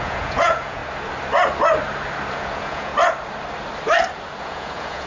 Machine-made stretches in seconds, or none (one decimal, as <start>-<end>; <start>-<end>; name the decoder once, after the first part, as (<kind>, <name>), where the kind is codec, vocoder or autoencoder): 0.0-0.8 (vocoder, Vocos); 2.3-2.9; 4.4-5.1